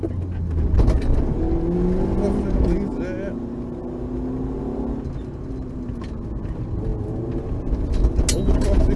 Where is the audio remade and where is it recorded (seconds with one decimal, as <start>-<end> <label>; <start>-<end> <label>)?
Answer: 0.0-9.0 recorded